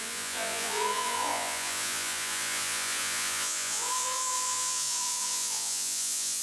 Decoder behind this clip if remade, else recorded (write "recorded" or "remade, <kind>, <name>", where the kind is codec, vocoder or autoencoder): remade, vocoder, Vocos